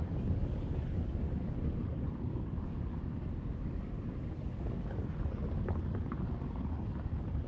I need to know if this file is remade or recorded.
remade